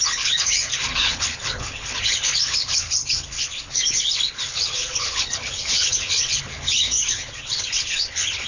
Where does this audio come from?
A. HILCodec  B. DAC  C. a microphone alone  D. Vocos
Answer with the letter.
A